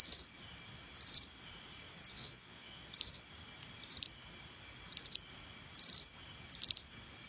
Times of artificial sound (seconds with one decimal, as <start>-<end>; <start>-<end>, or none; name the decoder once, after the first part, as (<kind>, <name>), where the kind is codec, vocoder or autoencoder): 2.1-2.8 (vocoder, Vocos)